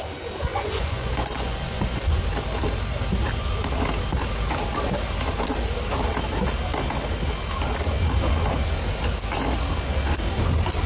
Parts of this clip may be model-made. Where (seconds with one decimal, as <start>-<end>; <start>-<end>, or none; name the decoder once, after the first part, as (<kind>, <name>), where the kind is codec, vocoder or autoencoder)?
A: 0.5-2.2 (vocoder, Vocos)